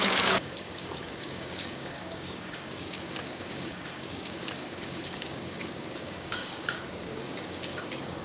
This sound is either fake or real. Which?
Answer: fake